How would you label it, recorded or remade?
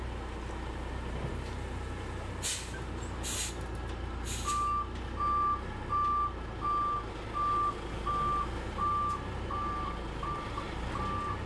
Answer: recorded